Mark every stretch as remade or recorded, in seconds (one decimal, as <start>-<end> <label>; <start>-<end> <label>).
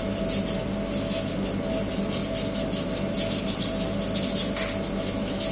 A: 0.0-5.5 recorded